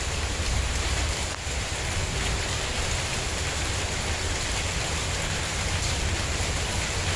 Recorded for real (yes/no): no